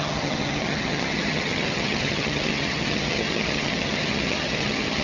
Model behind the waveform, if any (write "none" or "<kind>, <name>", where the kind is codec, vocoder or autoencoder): vocoder, HiFi-GAN